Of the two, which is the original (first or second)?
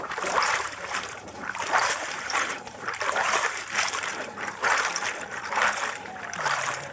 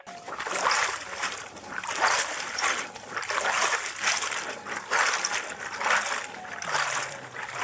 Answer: second